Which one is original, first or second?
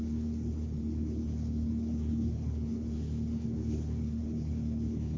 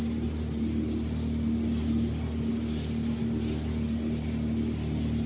second